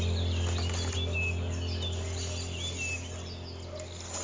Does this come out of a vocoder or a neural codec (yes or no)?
no